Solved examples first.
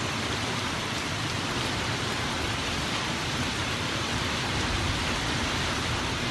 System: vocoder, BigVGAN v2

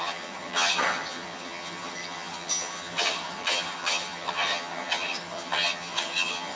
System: vocoder, HiFi-GAN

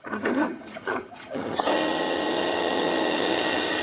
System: vocoder, HiFi-GAN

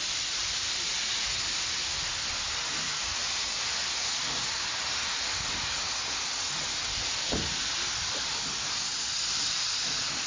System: none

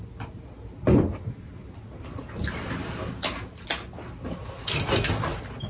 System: none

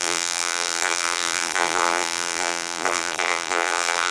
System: vocoder, BigVGAN v2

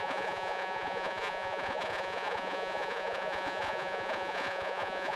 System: vocoder, Vocos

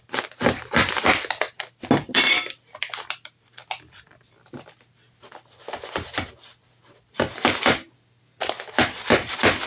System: none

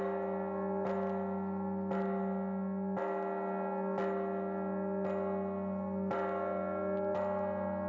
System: none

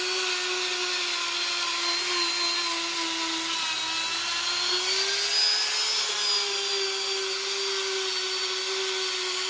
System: none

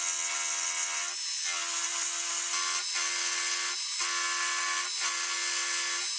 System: none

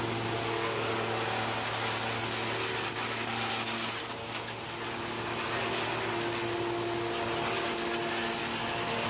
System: none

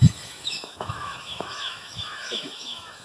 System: autoencoder, DAC-VAE